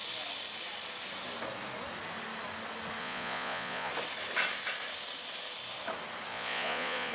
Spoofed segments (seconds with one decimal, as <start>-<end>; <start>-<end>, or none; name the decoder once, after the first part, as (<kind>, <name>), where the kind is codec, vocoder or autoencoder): 3.0-3.9 (vocoder, Vocos); 6.3-7.1